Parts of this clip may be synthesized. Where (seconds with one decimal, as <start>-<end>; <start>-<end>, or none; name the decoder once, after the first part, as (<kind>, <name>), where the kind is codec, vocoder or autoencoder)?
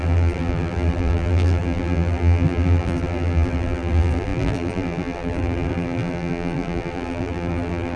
0.0-8.0 (vocoder, BigVGAN v2)